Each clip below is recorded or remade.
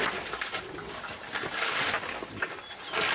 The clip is recorded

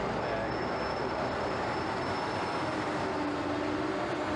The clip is recorded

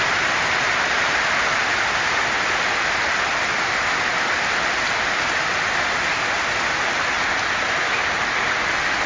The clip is recorded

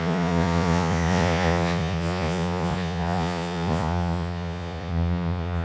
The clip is remade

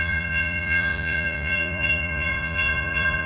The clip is remade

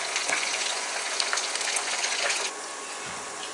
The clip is remade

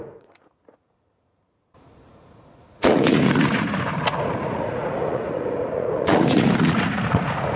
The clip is remade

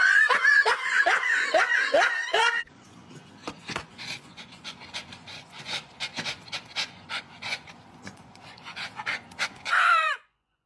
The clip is remade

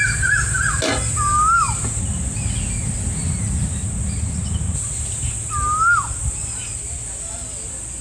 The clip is recorded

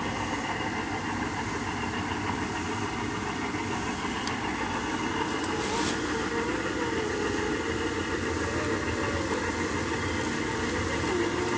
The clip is recorded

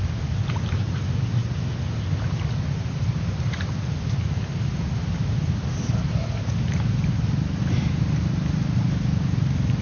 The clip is recorded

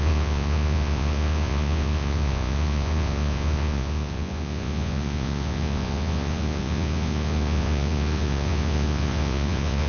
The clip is remade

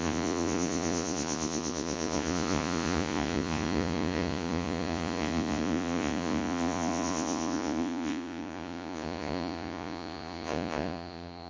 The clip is remade